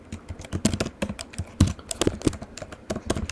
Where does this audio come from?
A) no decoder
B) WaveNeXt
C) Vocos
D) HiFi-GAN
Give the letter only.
A